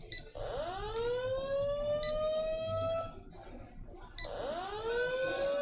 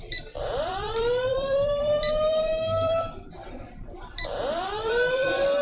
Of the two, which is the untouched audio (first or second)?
first